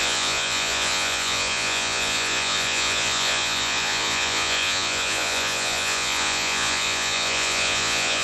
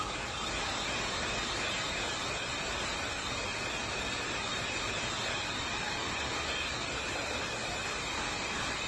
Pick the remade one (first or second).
first